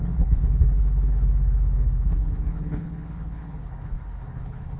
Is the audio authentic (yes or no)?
no